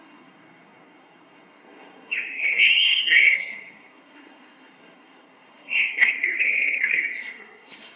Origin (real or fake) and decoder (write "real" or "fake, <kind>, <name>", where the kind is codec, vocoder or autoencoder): fake, codec, SNAC